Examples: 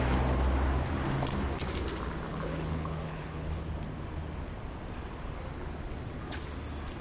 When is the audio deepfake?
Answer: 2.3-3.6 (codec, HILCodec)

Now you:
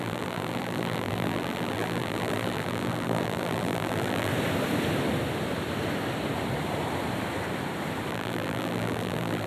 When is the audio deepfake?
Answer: 0.0-4.3 (vocoder, BigVGAN v2); 8.1-9.5

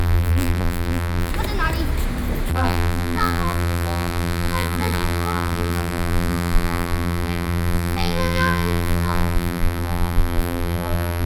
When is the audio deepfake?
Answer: 0.0-1.3 (vocoder, BigVGAN v2); 2.5-11.3